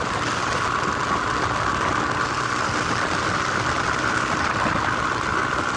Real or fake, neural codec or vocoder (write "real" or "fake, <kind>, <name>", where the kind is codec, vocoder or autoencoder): real